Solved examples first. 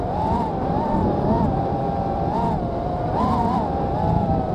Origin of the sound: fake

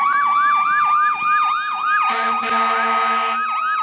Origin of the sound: real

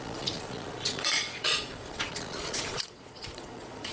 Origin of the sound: fake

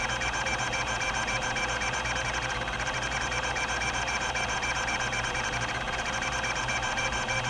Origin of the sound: fake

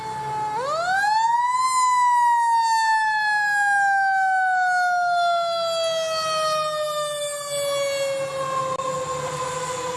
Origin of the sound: real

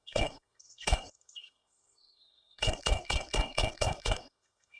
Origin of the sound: fake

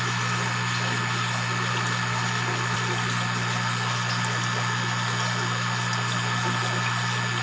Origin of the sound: real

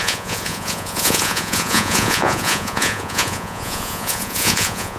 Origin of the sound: fake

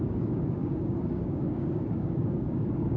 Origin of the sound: fake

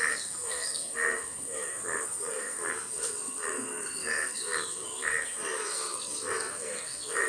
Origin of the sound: fake